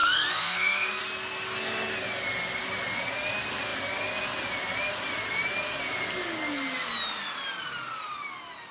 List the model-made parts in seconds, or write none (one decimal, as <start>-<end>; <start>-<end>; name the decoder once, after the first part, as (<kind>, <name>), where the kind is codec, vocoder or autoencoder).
0.0-1.0 (codec, SNAC)